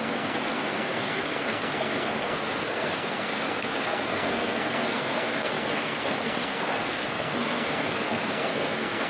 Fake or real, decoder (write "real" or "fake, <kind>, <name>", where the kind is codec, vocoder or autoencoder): fake, codec, SNAC